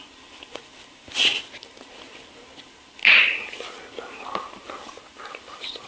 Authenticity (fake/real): real